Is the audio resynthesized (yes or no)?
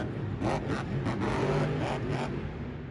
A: no